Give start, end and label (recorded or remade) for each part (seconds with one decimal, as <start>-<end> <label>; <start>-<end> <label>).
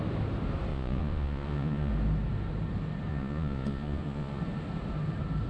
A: 0.0-0.7 recorded; 0.7-1.9 remade; 1.9-3.1 recorded; 3.1-4.4 remade; 4.4-5.5 recorded